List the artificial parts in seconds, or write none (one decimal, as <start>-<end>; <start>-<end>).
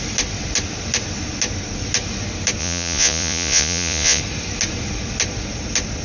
2.6-4.2